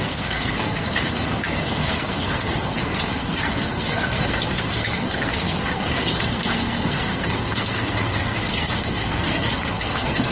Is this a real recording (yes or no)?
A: no